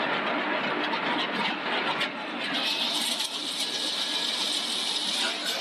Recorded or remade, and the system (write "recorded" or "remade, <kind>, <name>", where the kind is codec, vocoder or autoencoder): recorded